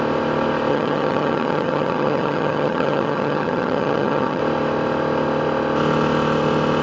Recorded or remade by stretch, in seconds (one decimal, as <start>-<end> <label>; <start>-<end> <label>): 0.0-0.7 recorded; 0.7-4.4 remade; 4.4-6.8 recorded